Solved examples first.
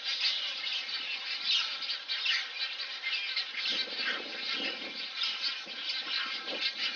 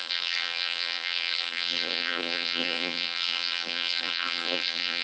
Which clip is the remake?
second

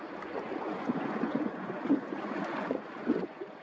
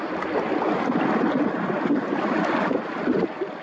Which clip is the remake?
first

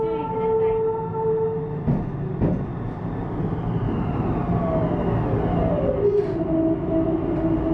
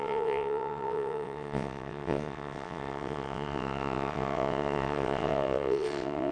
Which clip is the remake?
second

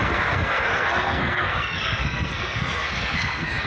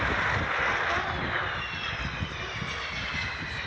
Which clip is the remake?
first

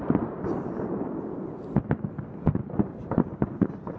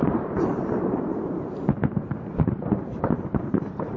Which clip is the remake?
second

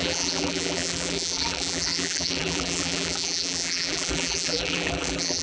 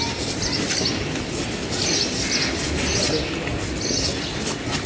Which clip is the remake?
first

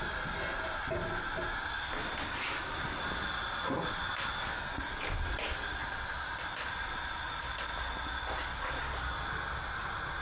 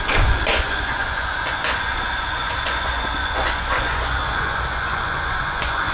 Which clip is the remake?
second